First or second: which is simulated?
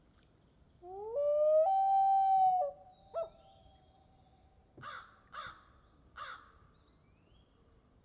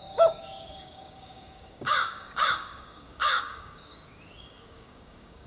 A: second